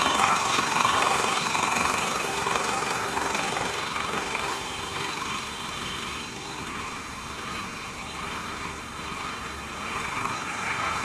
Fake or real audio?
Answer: fake